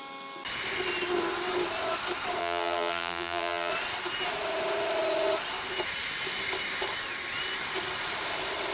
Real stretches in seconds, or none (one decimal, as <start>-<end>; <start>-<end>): 0.0-2.4; 3.7-8.7